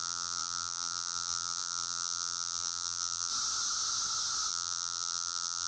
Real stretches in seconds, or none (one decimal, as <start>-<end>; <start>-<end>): 3.3-4.5

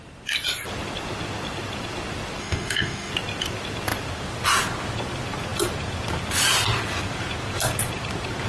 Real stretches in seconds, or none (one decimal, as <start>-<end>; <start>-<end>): 0.0-2.4; 3.1-8.5